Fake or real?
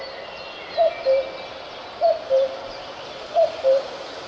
real